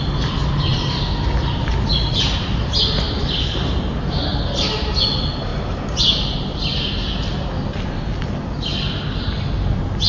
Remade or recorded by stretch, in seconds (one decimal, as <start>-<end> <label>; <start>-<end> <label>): 0.0-10.1 recorded